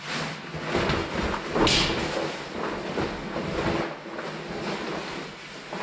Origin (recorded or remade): recorded